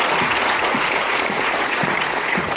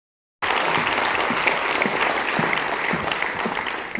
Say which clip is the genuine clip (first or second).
second